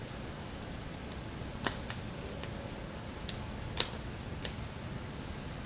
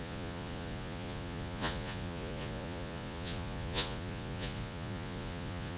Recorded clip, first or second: first